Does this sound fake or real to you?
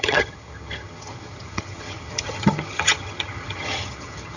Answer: fake